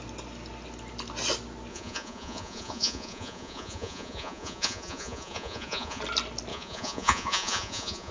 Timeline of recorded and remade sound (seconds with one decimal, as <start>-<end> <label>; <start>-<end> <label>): 0.0-1.7 recorded; 1.7-6.0 remade; 6.0-6.5 recorded; 6.5-8.1 remade